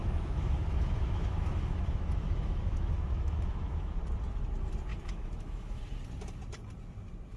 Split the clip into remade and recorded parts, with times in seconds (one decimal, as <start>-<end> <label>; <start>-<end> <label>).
0.0-3.9 remade; 3.9-4.9 recorded; 4.9-5.8 remade; 5.8-7.4 recorded